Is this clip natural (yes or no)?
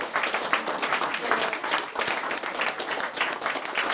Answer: yes